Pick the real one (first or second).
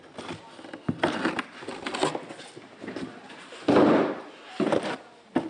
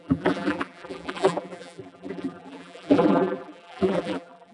first